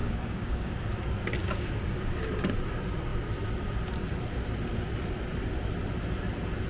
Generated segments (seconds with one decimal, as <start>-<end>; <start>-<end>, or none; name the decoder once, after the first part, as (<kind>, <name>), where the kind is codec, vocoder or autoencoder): 0.0-0.7 (codec, DAC); 1.4-2.2